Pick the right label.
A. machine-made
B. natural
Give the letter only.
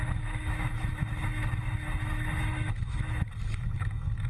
A